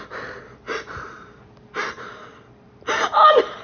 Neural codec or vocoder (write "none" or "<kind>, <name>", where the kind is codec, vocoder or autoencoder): vocoder, BigVGAN v2